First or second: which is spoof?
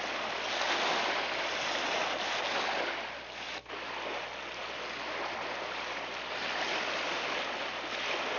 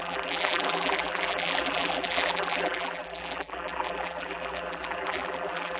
second